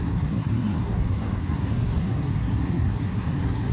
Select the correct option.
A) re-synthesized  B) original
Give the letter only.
A